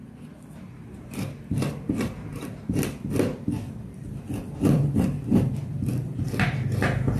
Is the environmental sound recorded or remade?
remade